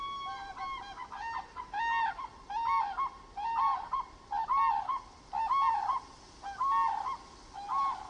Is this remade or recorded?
recorded